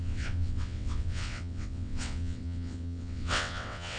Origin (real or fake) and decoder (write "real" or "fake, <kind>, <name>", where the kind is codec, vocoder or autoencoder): fake, vocoder, WaveNeXt